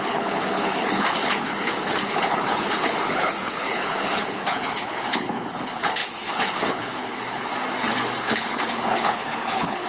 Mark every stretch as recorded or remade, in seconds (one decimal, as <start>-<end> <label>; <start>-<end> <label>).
0.0-7.5 remade; 7.5-8.2 recorded; 8.2-9.9 remade